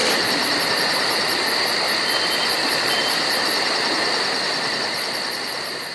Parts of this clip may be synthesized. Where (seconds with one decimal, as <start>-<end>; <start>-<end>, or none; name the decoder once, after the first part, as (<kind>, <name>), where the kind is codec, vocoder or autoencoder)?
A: none